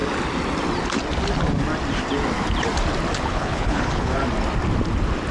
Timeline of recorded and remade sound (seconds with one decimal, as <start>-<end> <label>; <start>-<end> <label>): 0.0-3.2 recorded; 3.2-4.1 remade; 4.1-5.3 recorded